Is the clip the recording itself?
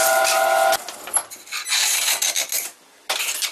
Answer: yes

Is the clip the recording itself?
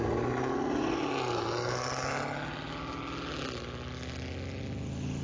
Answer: yes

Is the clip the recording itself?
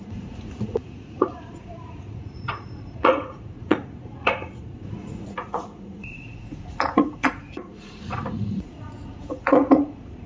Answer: no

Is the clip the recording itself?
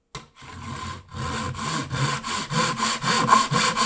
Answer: yes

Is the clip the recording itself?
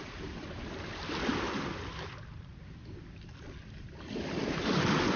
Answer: yes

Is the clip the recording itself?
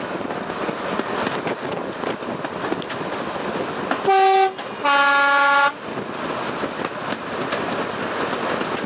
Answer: yes